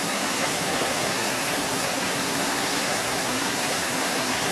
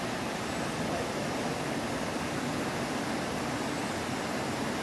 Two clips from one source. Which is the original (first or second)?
second